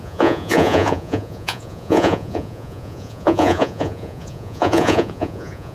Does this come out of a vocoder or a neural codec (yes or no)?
yes